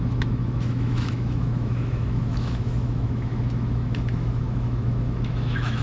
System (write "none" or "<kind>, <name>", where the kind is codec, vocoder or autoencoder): autoencoder, DAC-VAE